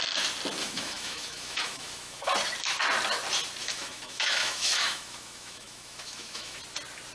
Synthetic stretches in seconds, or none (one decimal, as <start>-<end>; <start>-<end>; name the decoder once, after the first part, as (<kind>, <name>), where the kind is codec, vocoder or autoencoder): 0.6-2.3 (autoencoder, DAC-VAE); 3.6-6.6